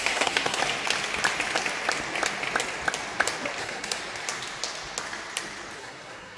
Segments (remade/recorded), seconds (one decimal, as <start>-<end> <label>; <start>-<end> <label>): 0.0-0.6 remade; 0.6-3.6 recorded; 3.6-4.0 remade; 4.0-5.8 recorded; 5.8-6.4 remade